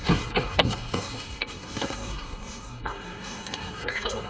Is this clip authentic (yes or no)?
no